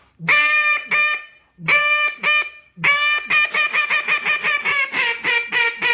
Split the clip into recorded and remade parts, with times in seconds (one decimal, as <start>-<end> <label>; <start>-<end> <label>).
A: 0.0-1.8 recorded; 1.8-3.9 remade; 3.9-4.7 recorded; 4.7-5.3 remade; 5.3-5.9 recorded